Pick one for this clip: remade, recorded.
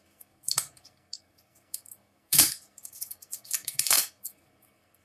remade